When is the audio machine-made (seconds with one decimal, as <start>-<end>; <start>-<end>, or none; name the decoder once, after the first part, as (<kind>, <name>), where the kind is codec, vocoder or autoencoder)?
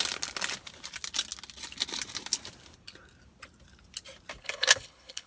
4.4-5.3 (codec, HILCodec)